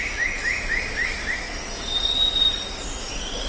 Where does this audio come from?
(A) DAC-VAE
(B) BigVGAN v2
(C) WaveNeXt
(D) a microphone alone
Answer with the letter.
D